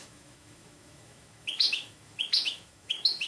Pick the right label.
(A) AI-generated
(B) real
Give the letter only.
A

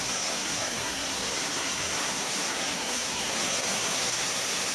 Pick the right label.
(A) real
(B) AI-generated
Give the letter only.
B